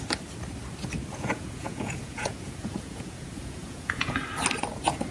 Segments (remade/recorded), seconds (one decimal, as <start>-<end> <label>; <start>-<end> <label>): 0.0-1.1 recorded; 1.1-4.2 remade; 4.2-5.1 recorded